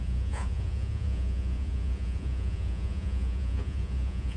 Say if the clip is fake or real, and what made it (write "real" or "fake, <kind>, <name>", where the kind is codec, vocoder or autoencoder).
fake, vocoder, Vocos